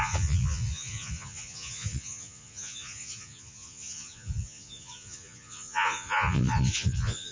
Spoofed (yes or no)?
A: yes